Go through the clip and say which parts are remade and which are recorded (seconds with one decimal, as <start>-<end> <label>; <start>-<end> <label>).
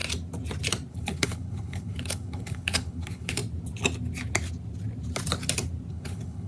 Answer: 0.0-0.9 recorded; 0.9-3.4 remade; 3.4-5.9 recorded; 5.9-6.5 remade